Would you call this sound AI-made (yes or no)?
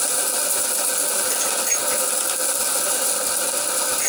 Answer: no